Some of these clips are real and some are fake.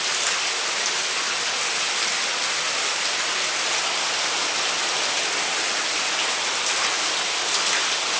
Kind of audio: real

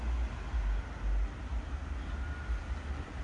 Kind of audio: real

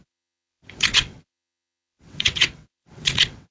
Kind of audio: fake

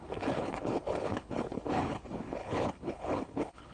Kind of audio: fake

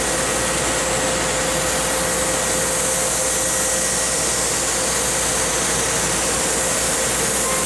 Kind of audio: real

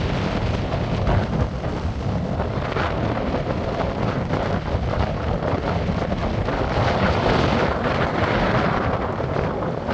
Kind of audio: real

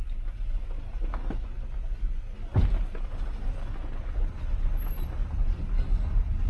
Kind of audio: real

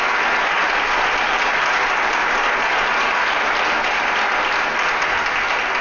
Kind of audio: real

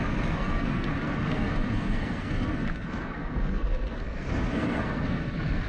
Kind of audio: fake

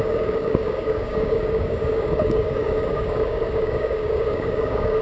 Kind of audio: fake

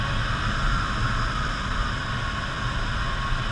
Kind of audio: real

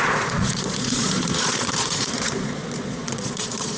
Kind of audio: fake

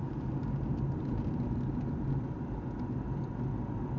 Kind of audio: real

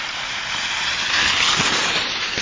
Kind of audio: real